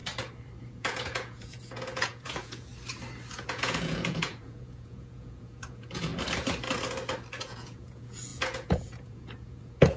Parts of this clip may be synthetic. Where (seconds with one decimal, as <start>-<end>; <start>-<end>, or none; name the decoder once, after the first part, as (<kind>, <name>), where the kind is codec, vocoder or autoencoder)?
0.6-2.7 (vocoder, Vocos); 3.3-6.1; 7.4-10.0